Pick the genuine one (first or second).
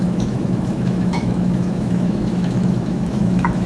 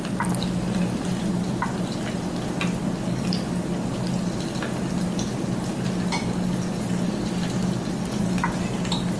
second